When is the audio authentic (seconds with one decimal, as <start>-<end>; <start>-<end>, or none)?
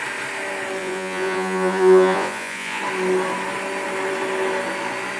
0.0-0.8; 2.8-5.2